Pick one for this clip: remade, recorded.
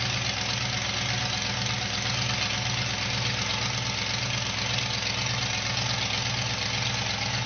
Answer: recorded